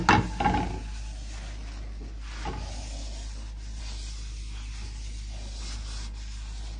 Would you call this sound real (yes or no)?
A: yes